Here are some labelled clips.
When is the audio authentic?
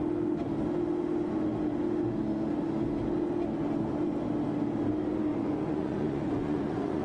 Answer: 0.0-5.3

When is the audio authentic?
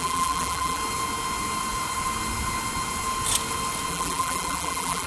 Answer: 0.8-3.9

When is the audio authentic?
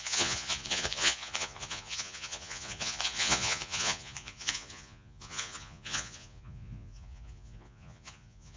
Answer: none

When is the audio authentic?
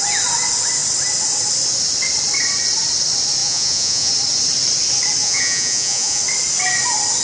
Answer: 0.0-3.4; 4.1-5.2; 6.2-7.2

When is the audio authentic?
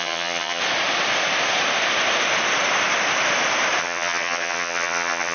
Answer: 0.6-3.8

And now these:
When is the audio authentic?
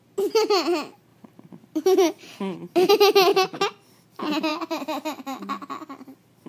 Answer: 0.0-1.1; 2.9-4.5; 5.4-6.5